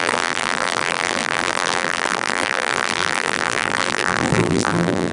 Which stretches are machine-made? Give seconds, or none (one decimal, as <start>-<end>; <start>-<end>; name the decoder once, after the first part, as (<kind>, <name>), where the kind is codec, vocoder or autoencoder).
0.0-5.1 (vocoder, BigVGAN v2)